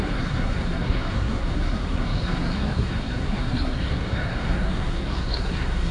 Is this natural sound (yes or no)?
no